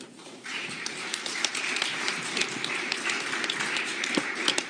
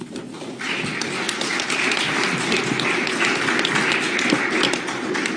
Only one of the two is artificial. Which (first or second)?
first